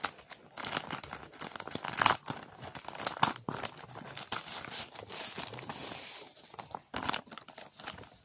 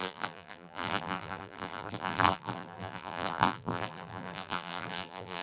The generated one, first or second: second